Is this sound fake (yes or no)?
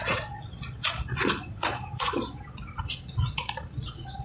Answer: yes